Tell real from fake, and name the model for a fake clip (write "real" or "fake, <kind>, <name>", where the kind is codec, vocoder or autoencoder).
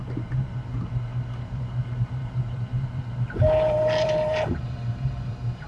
fake, vocoder, BigVGAN v2